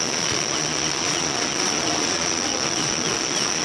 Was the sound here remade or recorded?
remade